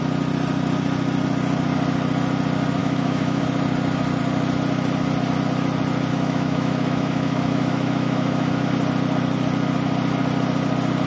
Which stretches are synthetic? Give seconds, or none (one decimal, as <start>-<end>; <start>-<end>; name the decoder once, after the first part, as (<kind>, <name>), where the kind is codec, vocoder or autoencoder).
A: 2.8-3.4 (autoencoder, DAC-VAE); 6.1-8.7